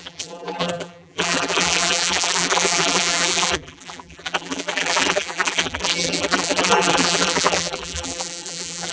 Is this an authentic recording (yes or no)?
no